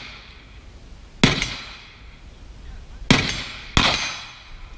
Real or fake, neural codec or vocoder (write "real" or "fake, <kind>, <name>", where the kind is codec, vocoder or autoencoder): real